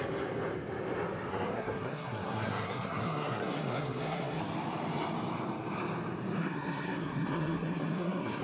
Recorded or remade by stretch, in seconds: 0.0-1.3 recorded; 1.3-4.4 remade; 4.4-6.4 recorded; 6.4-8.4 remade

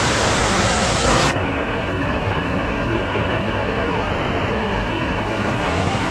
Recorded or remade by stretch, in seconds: 0.0-0.4 recorded; 0.4-4.1 remade; 4.1-4.5 recorded; 4.5-6.1 remade

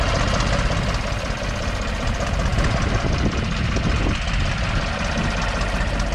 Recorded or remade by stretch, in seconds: 0.0-6.1 recorded

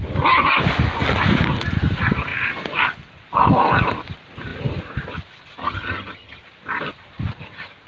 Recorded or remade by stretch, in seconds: 0.0-5.6 recorded; 5.6-6.4 remade; 6.4-7.9 recorded

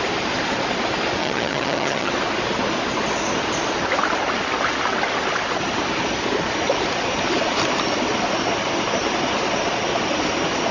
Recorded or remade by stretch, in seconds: 0.0-1.2 recorded; 1.2-2.1 remade; 2.1-10.7 recorded

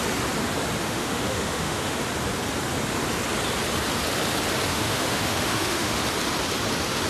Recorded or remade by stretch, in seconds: 0.0-0.8 recorded; 0.8-2.0 remade; 2.0-4.7 recorded; 4.7-6.0 remade; 6.0-7.1 recorded